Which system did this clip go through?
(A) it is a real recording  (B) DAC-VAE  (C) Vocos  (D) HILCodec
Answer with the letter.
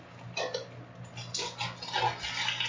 A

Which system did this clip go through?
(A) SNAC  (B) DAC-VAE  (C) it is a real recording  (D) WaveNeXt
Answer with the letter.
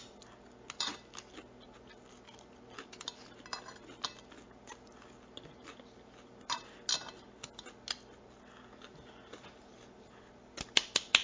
C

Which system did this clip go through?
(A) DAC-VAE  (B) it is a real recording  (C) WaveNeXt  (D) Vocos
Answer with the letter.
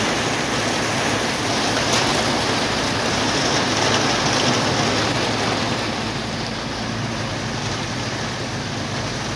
B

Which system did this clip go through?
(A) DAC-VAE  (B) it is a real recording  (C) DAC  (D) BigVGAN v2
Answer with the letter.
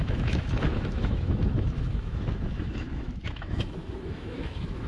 A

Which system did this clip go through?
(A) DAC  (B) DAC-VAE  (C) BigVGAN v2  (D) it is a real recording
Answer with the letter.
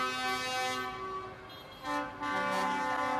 D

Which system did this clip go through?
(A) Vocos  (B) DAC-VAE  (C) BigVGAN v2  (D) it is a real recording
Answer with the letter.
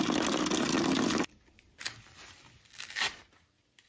D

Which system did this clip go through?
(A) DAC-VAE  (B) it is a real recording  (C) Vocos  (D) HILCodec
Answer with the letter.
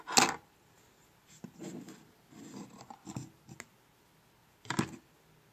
B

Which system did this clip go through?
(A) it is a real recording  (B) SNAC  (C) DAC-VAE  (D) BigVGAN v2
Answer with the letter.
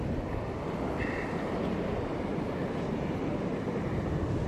A